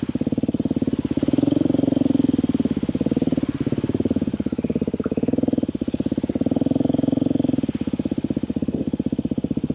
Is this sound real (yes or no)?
yes